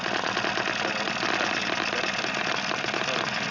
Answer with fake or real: real